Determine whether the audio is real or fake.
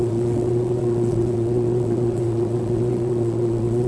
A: fake